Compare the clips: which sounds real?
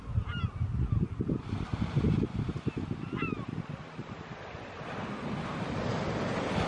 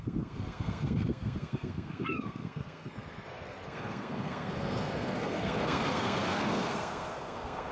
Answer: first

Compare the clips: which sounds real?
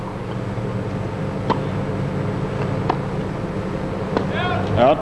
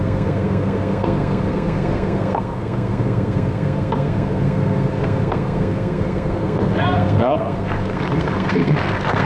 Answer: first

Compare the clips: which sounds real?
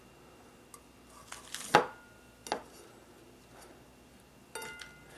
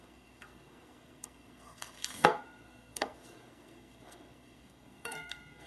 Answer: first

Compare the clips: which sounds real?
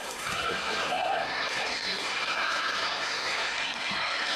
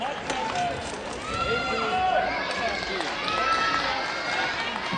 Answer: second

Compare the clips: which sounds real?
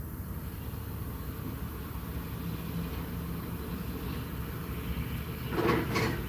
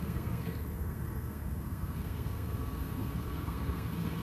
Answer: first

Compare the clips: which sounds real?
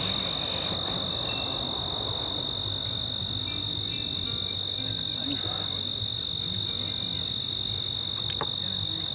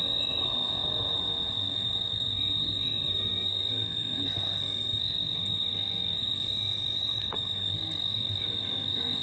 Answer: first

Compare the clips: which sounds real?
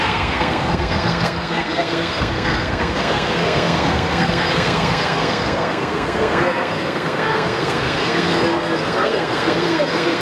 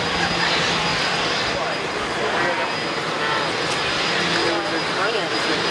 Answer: second